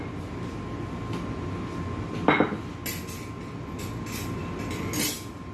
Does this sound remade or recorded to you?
recorded